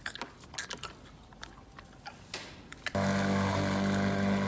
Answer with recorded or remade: recorded